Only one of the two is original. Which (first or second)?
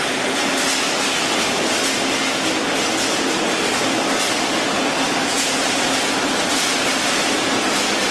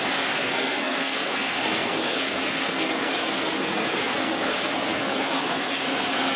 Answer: first